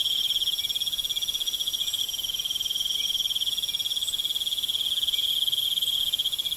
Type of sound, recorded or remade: recorded